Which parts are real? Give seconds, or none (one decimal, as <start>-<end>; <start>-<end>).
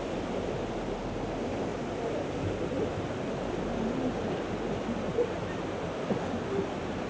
0.0-7.1